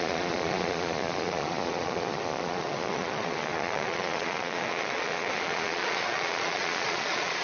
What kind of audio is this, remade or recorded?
remade